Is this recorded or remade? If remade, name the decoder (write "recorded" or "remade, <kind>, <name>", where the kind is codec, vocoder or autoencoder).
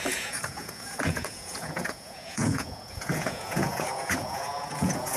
remade, vocoder, Vocos